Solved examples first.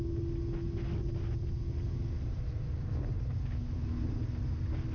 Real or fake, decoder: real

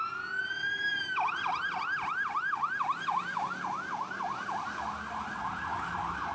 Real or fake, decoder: real